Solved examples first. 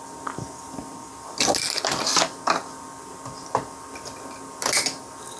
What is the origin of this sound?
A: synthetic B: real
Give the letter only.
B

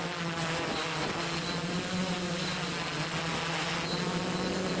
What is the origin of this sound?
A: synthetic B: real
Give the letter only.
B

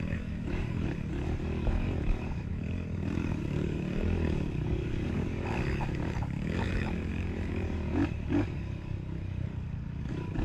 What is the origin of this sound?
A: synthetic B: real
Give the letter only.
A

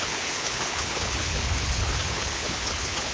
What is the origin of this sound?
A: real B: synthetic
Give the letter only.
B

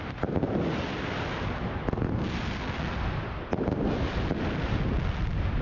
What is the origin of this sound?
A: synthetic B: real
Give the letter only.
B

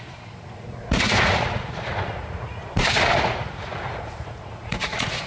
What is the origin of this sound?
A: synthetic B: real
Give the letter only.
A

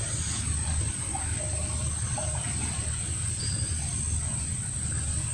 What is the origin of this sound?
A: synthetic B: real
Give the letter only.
B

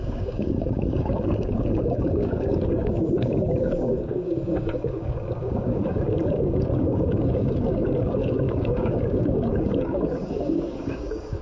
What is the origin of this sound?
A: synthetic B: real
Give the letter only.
A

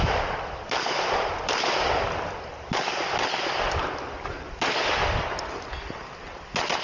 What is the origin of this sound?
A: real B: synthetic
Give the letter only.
A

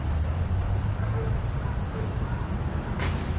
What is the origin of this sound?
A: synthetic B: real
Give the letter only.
B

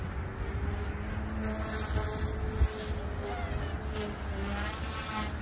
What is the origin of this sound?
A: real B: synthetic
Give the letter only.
A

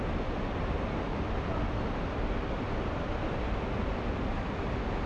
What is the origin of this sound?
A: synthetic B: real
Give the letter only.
B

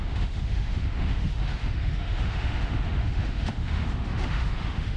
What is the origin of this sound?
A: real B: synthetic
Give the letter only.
B